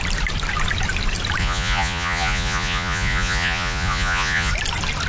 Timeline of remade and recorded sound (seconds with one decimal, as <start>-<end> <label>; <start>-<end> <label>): 0.0-1.4 recorded; 1.4-4.5 remade; 4.5-5.1 recorded